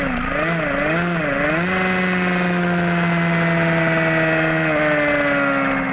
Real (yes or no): yes